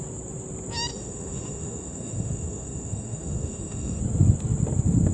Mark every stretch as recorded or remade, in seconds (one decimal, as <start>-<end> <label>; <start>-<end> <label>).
0.0-0.9 recorded; 0.9-4.0 remade; 4.0-5.1 recorded